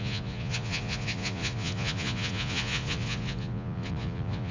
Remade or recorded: remade